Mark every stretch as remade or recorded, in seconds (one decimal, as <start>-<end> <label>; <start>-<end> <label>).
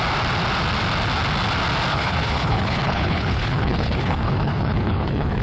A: 0.0-1.9 recorded; 1.9-5.4 remade